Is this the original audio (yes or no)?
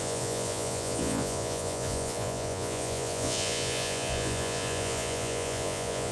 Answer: no